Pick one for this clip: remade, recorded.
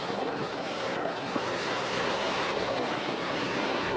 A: remade